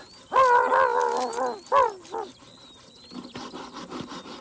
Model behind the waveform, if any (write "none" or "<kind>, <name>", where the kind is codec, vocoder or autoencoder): none